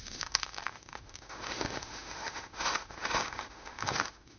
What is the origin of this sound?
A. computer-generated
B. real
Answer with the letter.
A